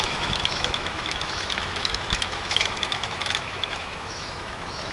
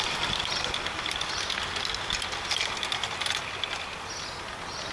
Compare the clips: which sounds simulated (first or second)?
first